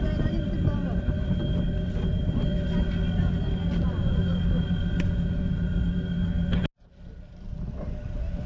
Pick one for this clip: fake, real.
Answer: real